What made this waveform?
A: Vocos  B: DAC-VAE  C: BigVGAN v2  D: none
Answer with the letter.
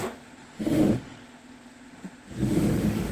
B